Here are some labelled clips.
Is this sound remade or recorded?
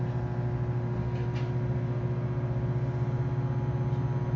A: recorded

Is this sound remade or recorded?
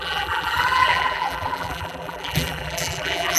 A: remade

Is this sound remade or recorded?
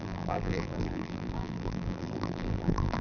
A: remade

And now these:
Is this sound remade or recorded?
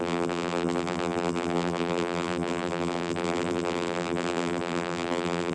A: remade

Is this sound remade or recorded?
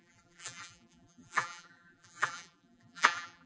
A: remade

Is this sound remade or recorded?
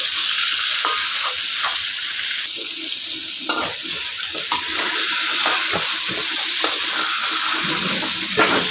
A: recorded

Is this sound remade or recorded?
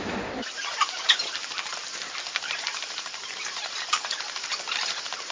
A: remade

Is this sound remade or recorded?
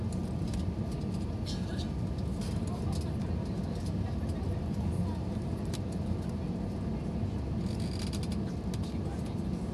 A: recorded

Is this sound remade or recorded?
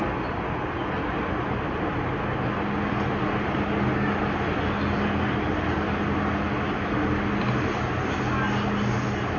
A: recorded